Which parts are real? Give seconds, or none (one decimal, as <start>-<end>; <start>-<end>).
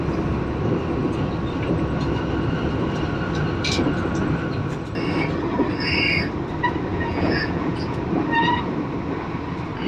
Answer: 0.0-6.9; 8.0-9.9